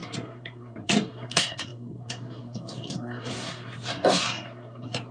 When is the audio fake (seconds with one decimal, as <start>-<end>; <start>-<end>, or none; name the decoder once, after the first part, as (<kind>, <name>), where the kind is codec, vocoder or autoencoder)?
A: 0.0-5.1 (codec, SNAC)